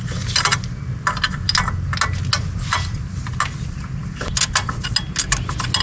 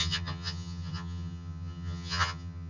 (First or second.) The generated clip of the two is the second